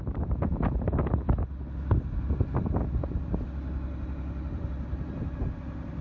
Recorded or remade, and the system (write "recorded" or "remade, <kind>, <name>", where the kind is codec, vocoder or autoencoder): recorded